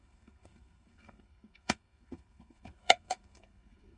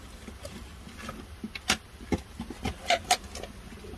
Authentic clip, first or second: second